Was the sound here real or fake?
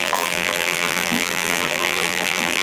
fake